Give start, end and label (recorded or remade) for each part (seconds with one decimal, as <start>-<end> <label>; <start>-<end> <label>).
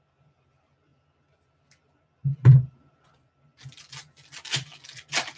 0.0-5.4 recorded